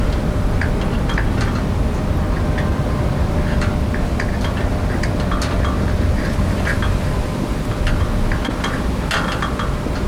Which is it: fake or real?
real